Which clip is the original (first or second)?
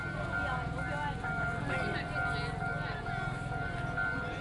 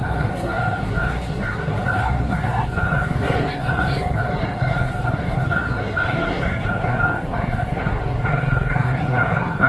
first